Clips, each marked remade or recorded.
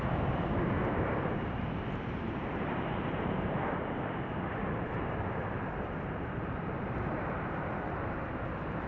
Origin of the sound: remade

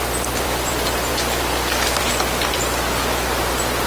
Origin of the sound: remade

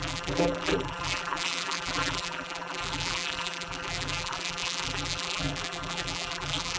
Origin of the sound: remade